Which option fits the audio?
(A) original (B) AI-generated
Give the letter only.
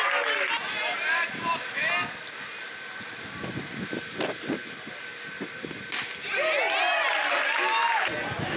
A